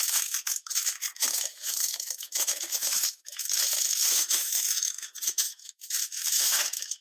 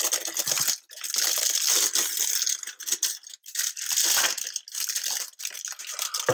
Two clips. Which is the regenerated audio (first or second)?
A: first